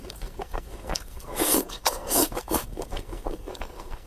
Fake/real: fake